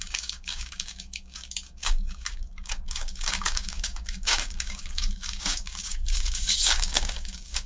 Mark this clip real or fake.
fake